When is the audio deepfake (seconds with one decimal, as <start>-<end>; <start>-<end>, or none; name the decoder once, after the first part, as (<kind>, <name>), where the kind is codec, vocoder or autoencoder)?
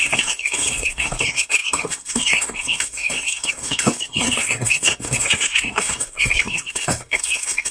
0.0-7.7 (codec, SNAC)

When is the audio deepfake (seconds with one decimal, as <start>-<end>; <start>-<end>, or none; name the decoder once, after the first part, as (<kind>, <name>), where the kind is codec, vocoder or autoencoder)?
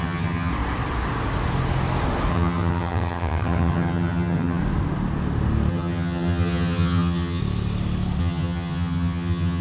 0.0-0.5 (vocoder, HiFi-GAN); 2.3-4.6; 5.7-7.4; 8.2-9.6